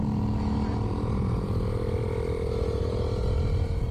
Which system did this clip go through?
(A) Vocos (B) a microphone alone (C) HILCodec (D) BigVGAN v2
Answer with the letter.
B